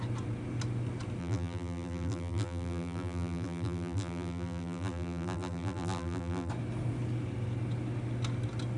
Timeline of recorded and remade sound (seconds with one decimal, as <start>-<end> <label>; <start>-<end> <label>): 0.0-1.2 recorded; 1.2-6.5 remade; 6.5-8.8 recorded